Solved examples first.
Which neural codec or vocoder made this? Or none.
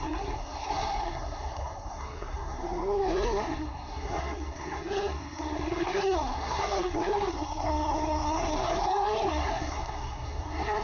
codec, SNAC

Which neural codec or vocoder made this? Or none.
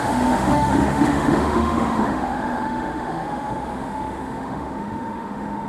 autoencoder, DAC-VAE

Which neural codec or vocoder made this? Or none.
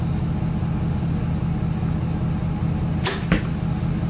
none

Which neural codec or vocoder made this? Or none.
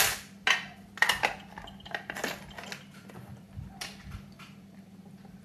none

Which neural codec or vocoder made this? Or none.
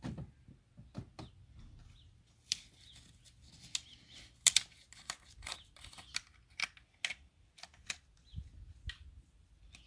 none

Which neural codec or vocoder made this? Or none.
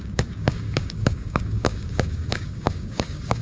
codec, DAC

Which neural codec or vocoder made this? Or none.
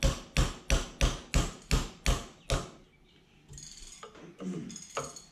none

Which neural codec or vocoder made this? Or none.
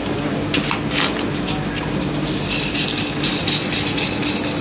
none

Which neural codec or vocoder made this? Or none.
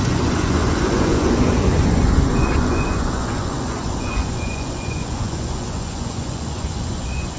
vocoder, Vocos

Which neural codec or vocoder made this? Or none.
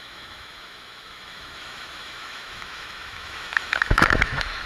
autoencoder, DAC-VAE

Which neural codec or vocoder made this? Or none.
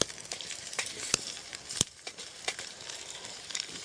vocoder, BigVGAN v2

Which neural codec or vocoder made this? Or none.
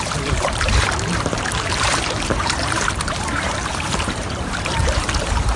vocoder, BigVGAN v2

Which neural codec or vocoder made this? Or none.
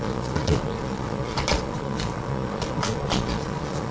vocoder, Vocos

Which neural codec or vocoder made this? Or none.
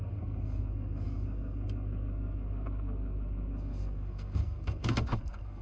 codec, SNAC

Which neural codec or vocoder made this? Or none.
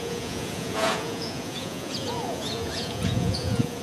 vocoder, Vocos